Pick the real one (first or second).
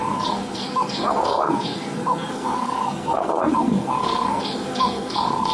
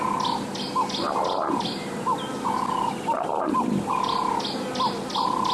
second